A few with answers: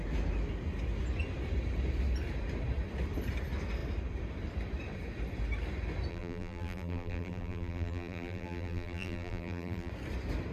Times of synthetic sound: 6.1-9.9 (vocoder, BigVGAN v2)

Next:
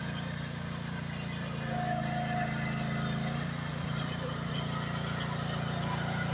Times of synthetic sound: 3.7-4.5 (vocoder, BigVGAN v2)

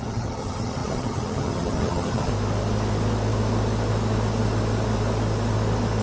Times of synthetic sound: 0.0-2.3 (vocoder, HiFi-GAN)

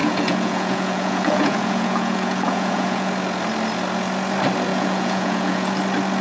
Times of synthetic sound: 0.0-3.1 (vocoder, Vocos); 4.7-5.7

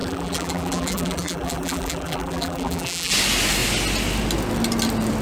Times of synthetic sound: 0.0-3.1 (vocoder, BigVGAN v2)

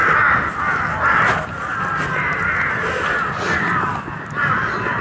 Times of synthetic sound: none

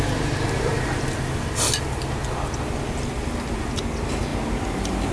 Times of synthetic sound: none